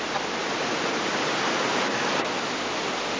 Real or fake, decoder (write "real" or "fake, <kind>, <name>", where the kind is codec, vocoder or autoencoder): real